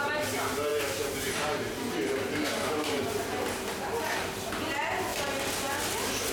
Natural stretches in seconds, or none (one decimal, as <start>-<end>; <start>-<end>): 0.0-6.3